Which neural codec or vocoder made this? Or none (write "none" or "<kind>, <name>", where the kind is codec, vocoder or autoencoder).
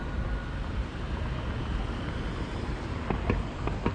none